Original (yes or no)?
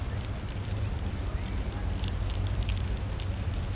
no